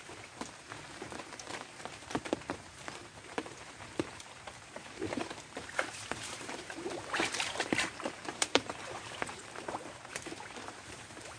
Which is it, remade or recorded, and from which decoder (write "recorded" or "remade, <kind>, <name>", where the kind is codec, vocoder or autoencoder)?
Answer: remade, vocoder, BigVGAN v2